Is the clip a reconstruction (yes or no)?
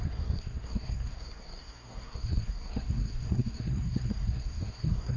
yes